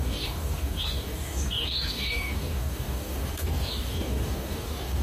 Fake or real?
fake